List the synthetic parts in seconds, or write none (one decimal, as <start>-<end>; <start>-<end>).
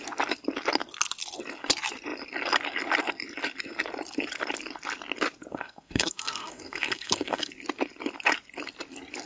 5.5-7.5